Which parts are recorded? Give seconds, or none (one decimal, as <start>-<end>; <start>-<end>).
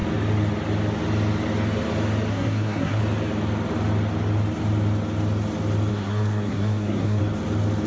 0.0-2.3; 3.0-5.9; 7.2-7.9